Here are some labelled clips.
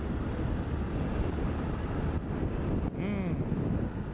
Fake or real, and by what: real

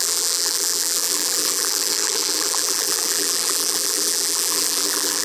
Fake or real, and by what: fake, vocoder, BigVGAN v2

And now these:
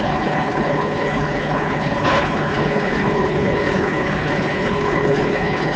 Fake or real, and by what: fake, codec, HILCodec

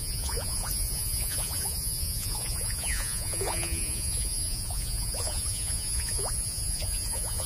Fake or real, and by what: fake, vocoder, Vocos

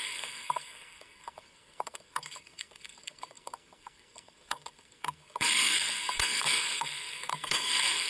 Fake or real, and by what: fake, codec, SNAC